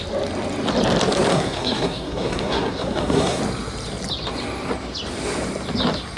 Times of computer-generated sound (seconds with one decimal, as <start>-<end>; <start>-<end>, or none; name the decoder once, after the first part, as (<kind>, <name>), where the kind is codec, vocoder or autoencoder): 1.3-3.4 (codec, SNAC)